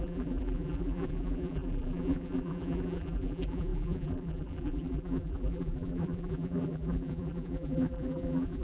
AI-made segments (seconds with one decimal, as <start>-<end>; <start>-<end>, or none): 0.0-8.6